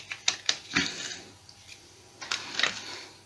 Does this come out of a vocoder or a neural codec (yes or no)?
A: yes